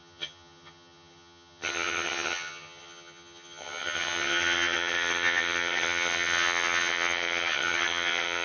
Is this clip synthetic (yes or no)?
yes